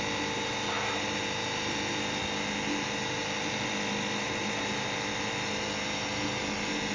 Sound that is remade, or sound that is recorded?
recorded